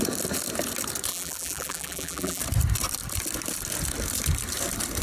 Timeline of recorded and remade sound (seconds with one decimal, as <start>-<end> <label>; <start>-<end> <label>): 0.0-1.1 recorded; 1.1-2.4 remade; 2.4-5.0 recorded